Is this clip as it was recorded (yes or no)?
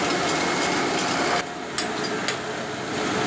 yes